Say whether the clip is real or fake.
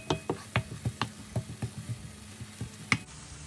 real